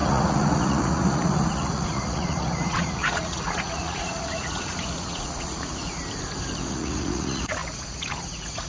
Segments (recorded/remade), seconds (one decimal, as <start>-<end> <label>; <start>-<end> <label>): 0.0-6.0 remade; 6.0-6.7 recorded; 6.7-8.7 remade